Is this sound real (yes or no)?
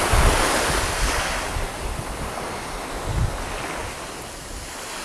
yes